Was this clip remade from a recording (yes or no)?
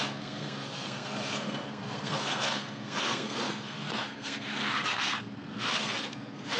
yes